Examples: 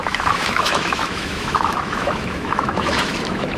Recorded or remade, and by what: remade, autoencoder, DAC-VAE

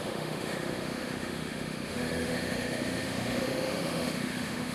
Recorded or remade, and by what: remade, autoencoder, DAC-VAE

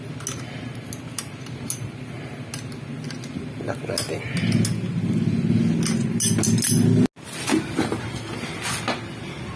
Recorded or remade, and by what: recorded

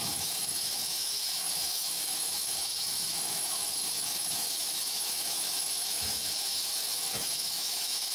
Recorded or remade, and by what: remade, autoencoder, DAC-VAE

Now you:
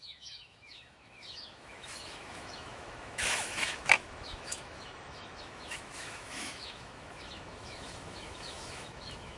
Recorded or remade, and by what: remade, autoencoder, DAC-VAE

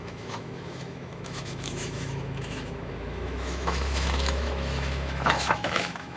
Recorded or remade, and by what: remade, autoencoder, DAC-VAE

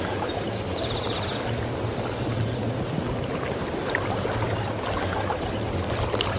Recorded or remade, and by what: recorded